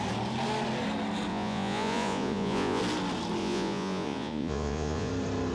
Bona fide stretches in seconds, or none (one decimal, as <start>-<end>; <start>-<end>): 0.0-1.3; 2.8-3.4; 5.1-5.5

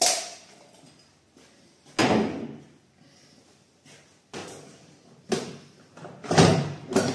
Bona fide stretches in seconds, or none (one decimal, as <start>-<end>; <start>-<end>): 0.0-7.1

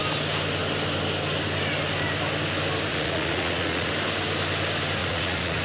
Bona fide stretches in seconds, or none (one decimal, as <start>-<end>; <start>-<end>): 0.0-2.9; 3.9-5.0

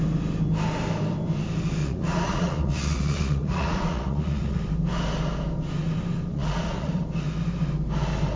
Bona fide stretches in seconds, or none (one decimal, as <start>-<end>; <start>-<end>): 0.0-1.8; 4.6-6.3; 7.0-8.4

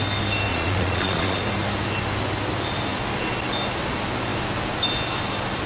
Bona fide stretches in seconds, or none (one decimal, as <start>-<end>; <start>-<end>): 0.0-0.5; 1.4-5.7

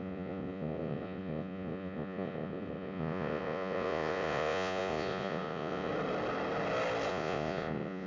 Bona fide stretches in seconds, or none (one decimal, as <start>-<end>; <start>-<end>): 5.9-7.1

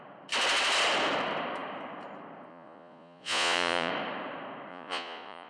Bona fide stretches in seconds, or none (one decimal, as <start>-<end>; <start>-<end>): 0.0-2.5; 3.9-4.7

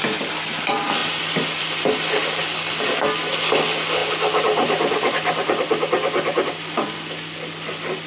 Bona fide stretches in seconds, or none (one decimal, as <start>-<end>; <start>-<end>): 0.0-8.1